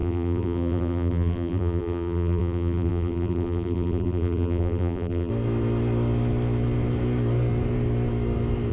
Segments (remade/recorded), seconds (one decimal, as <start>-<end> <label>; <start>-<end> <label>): 0.0-5.3 remade; 5.3-8.7 recorded